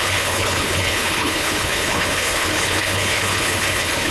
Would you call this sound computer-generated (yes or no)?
yes